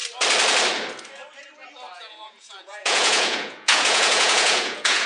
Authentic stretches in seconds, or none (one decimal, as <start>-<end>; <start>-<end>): 0.0-2.0